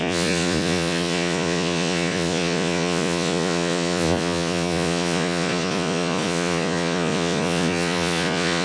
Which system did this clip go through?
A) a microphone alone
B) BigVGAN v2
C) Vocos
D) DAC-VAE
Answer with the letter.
C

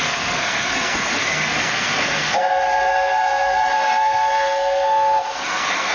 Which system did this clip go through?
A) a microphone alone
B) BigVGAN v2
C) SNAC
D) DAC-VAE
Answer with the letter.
C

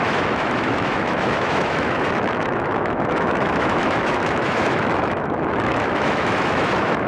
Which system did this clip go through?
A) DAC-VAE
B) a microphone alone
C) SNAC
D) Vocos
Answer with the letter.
A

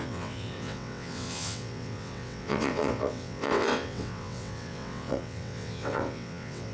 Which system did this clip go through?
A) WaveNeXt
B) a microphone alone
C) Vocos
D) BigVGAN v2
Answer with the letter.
A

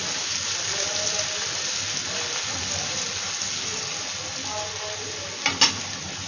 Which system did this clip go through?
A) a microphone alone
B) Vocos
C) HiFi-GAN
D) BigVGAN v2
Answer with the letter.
A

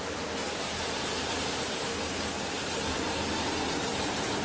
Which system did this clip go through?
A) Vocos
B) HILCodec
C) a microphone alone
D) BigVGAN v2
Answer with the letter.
C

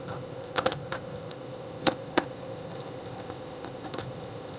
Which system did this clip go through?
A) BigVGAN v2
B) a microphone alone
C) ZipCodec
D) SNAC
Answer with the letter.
C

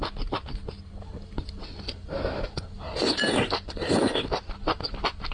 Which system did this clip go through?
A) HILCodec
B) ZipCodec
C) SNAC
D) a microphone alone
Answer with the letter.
D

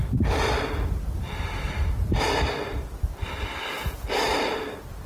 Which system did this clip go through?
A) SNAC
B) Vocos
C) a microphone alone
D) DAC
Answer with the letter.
C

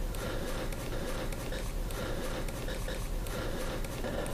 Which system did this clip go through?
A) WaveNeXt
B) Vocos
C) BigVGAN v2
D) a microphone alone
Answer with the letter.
D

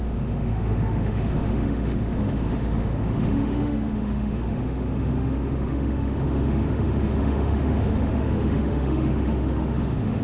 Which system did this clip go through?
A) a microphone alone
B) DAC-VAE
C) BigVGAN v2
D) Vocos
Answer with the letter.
B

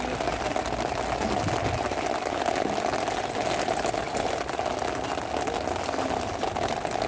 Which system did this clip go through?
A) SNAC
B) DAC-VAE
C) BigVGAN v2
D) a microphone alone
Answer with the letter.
D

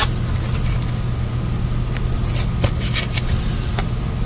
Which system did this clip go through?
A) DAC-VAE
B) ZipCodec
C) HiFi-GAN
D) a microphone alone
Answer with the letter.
D